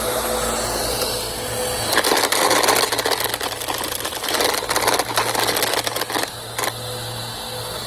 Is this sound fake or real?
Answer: real